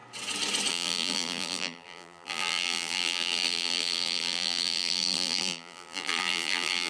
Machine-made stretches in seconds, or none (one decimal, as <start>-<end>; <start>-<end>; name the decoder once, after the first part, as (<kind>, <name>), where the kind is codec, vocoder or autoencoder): 0.7-6.9 (vocoder, BigVGAN v2)